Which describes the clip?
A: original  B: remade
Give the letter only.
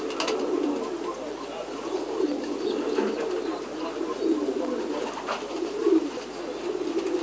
A